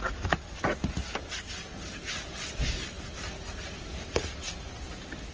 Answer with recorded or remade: recorded